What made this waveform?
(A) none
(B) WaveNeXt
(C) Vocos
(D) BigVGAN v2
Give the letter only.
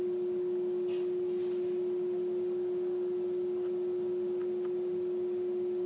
A